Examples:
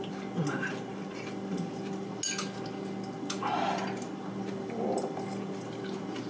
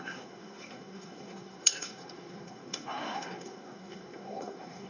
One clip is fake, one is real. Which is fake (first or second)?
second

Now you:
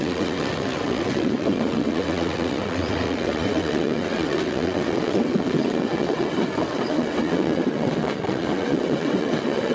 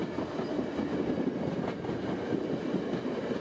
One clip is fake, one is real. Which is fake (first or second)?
first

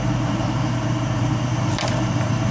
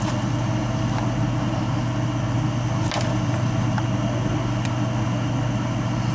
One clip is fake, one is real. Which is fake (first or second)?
first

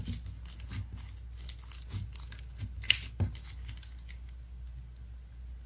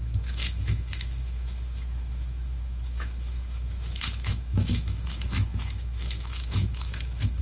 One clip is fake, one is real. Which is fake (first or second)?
second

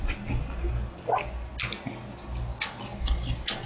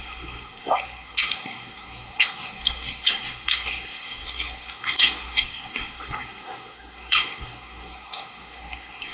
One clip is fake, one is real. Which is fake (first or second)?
second